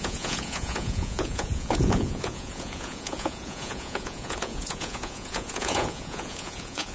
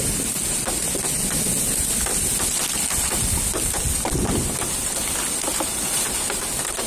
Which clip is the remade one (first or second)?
first